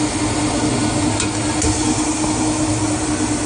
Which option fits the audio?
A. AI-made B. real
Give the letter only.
B